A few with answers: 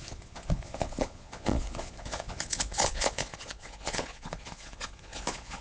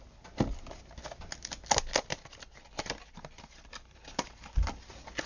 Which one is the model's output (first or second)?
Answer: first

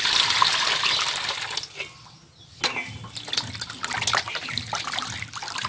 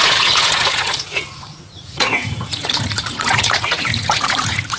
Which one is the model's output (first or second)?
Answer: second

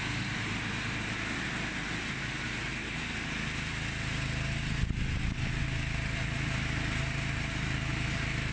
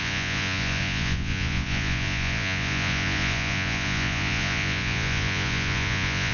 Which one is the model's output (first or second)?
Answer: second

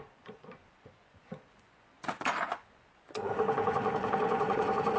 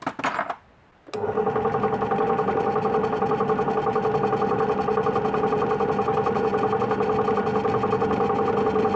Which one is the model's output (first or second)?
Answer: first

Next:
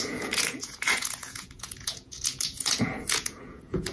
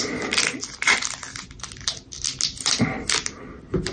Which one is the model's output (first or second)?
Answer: first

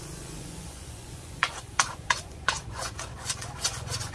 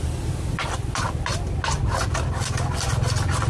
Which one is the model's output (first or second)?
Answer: first